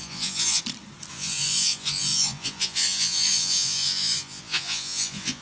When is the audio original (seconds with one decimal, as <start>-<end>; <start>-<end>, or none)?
0.6-1.1